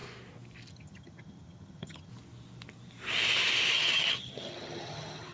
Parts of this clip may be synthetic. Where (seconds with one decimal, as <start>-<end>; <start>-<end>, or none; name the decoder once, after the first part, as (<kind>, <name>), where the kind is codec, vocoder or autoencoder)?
0.7-2.1 (vocoder, HiFi-GAN); 3.7-5.3

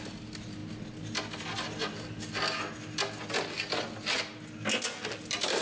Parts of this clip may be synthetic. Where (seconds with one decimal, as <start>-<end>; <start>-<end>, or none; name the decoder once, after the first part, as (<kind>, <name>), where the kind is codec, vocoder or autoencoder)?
none